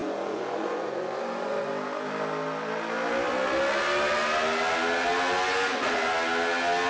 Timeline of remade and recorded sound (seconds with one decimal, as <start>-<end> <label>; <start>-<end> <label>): 0.0-1.7 remade; 1.7-6.9 recorded